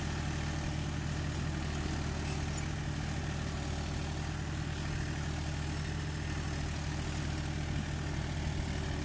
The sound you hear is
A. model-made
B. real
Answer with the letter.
B